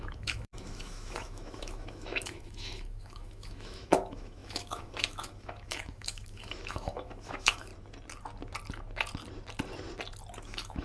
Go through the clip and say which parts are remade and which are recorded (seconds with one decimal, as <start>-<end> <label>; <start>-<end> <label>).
0.0-7.7 remade; 7.7-10.4 recorded; 10.4-10.8 remade

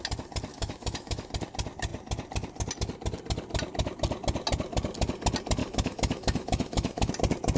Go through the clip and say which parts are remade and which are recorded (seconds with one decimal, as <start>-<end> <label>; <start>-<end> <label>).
0.0-0.5 recorded; 0.5-1.3 remade; 1.3-5.6 recorded; 5.6-7.1 remade; 7.1-7.6 recorded

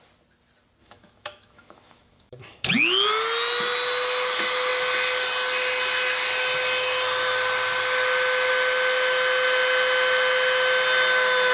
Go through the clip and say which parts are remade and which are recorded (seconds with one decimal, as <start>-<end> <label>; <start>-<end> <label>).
0.0-0.8 recorded; 0.8-2.7 remade; 2.7-11.5 recorded

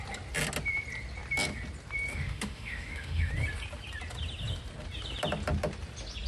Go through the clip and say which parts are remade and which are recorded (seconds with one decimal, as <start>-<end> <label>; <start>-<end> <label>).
0.0-2.1 recorded; 2.1-3.3 remade; 3.3-6.3 recorded

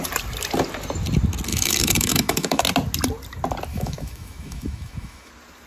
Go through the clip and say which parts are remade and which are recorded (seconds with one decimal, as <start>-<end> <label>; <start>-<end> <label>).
0.0-1.5 recorded; 1.5-2.6 remade; 2.6-3.7 recorded; 3.7-5.3 remade; 5.3-5.7 recorded

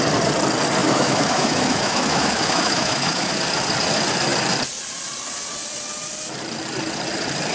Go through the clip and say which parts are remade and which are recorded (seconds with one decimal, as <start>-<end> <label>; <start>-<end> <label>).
0.0-0.8 recorded; 0.8-3.3 remade; 3.3-7.5 recorded